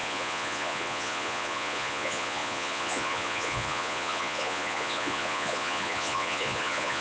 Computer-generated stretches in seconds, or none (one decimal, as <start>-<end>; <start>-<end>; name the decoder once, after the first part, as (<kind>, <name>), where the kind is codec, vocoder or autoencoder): 0.0-7.0 (vocoder, Vocos)